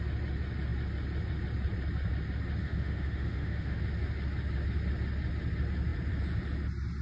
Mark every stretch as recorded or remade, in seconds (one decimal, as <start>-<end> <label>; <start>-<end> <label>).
0.0-2.6 recorded; 2.6-3.8 remade; 3.8-7.0 recorded